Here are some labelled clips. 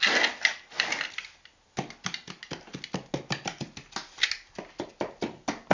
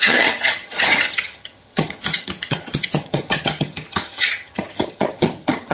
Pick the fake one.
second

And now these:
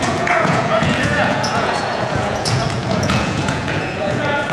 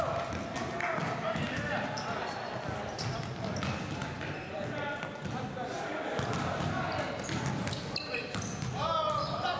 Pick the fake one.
first